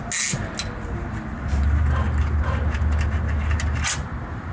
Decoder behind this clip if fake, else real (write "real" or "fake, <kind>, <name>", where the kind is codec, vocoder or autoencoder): real